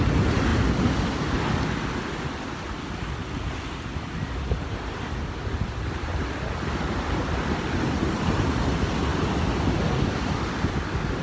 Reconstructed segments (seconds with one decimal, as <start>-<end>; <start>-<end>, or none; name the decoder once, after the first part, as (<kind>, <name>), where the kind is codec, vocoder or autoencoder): none